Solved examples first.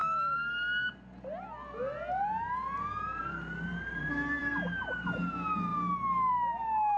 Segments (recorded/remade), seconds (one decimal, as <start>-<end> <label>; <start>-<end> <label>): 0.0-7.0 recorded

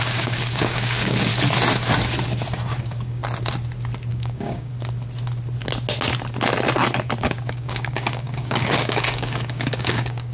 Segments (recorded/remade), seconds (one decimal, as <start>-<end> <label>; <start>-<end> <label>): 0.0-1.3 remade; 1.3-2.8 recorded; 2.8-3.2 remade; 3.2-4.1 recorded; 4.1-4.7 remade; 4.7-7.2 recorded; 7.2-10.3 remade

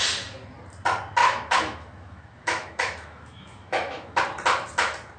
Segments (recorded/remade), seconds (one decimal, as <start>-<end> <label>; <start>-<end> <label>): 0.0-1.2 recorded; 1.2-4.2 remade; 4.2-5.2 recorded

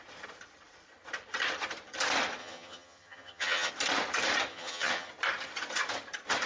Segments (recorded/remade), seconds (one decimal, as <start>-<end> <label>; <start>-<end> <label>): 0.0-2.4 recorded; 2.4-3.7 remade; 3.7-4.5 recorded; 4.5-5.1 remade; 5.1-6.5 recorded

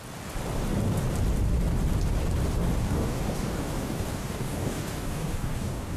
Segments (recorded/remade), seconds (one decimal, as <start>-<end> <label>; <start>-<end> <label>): 0.0-2.8 recorded; 2.8-6.0 remade

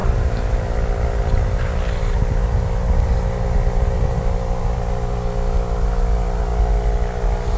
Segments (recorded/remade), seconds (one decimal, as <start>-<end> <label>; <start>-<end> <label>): 0.0-7.6 recorded